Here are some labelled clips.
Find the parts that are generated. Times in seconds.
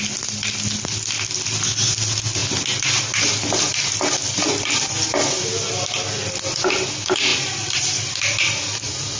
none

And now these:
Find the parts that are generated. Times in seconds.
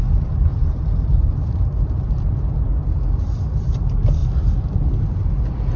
0.5-2.4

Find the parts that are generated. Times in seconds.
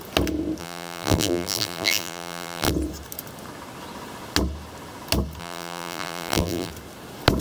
0.6-2.7; 5.4-6.7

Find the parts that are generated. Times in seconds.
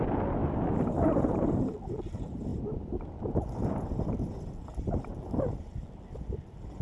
none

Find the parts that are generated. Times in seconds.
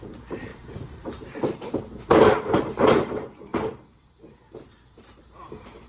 0.0-5.9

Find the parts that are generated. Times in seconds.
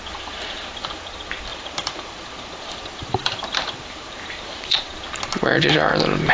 1.5-4.9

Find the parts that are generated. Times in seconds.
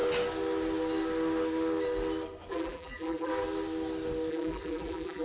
2.5-3.3; 4.3-5.2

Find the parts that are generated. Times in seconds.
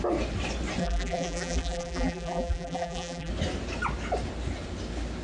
0.8-3.3